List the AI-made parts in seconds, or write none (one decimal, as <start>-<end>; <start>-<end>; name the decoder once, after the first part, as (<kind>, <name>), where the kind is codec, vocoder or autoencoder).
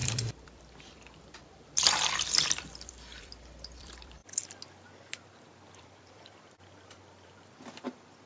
0.0-4.2 (vocoder, BigVGAN v2); 5.8-8.3